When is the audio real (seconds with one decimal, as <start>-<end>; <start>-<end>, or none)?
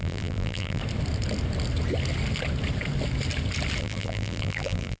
0.8-3.8